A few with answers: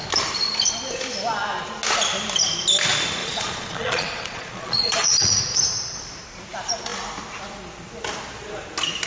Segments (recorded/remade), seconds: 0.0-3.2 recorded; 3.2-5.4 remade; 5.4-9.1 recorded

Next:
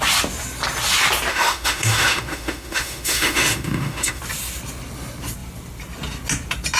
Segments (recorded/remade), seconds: 0.0-1.3 recorded; 1.3-4.2 remade; 4.2-6.8 recorded

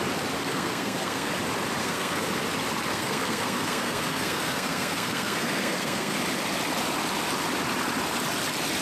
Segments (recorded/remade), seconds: 0.0-0.4 recorded; 0.4-1.3 remade; 1.3-1.8 recorded; 1.8-2.3 remade; 2.3-2.9 recorded; 2.9-6.2 remade; 6.2-8.8 recorded